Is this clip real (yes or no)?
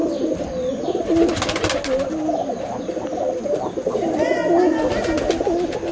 yes